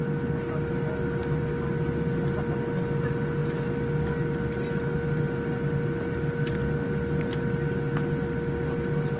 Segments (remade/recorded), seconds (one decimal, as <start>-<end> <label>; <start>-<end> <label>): 0.0-9.2 recorded